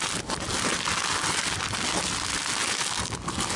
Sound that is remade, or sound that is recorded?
recorded